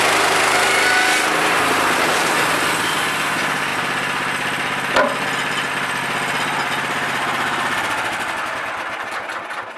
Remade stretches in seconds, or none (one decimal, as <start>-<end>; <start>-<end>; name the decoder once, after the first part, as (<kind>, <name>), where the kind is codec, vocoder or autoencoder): none